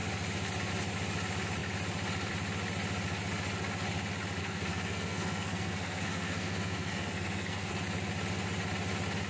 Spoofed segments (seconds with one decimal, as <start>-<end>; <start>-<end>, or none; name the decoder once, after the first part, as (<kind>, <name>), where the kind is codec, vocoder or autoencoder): 4.4-7.7 (codec, SNAC)